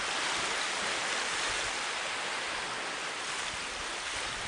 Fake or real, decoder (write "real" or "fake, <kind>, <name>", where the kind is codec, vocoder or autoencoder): real